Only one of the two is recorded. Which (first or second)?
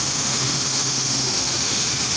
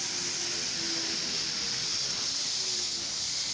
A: second